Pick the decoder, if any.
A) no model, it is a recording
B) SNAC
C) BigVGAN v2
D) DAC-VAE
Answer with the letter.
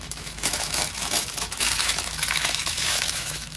D